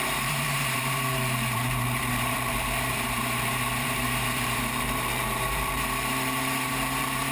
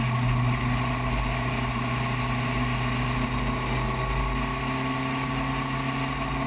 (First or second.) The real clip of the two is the second